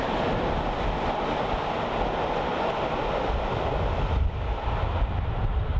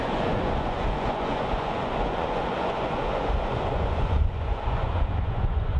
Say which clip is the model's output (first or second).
second